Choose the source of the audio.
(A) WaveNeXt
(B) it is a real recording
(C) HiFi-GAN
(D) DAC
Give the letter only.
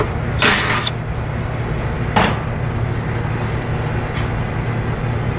B